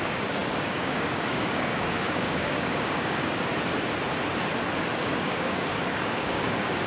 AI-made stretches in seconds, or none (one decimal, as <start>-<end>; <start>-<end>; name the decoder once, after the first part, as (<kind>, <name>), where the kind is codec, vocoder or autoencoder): 0.0-3.5 (codec, DAC); 5.0-6.9

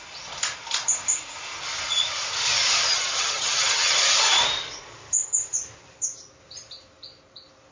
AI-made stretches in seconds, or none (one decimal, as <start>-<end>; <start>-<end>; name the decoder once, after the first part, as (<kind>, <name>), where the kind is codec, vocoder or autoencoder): 2.9-4.0 (vocoder, HiFi-GAN)

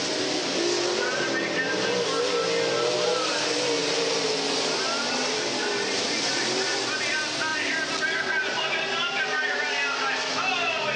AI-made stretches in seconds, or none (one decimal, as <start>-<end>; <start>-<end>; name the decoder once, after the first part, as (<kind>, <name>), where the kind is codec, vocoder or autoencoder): 7.5-9.7 (vocoder, BigVGAN v2)

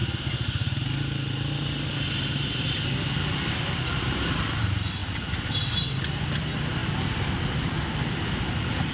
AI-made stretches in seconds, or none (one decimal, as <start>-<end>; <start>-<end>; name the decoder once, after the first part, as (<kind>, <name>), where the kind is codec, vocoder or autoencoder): 2.9-6.8 (vocoder, BigVGAN v2)

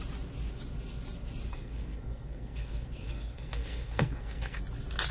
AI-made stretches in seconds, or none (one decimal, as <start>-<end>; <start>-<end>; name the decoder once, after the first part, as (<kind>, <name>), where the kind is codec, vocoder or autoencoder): 1.5-4.6 (codec, SNAC)

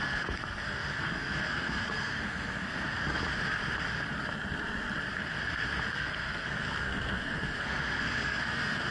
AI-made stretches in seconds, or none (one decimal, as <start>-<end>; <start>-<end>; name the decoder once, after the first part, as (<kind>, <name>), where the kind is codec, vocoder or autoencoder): 0.0-3.2 (codec, SNAC); 5.9-8.9